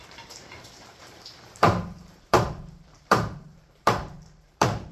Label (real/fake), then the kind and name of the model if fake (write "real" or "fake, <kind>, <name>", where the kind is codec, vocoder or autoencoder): fake, vocoder, BigVGAN v2